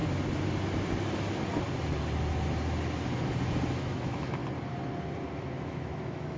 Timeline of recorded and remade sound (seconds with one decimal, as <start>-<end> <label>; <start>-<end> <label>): 0.0-3.8 recorded; 3.8-4.4 remade; 4.4-5.3 recorded; 5.3-6.4 remade